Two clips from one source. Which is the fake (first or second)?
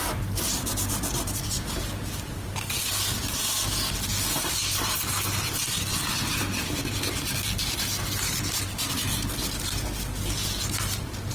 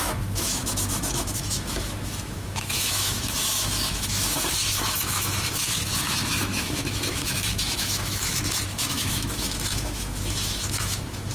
second